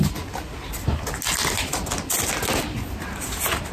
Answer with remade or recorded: recorded